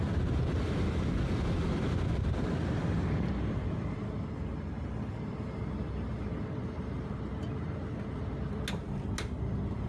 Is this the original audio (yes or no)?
yes